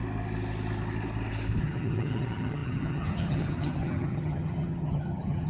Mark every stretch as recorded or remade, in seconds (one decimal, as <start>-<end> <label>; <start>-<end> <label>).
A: 0.0-1.6 recorded; 1.6-5.5 remade